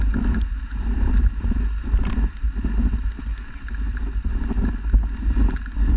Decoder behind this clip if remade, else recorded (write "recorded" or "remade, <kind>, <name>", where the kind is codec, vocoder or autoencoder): recorded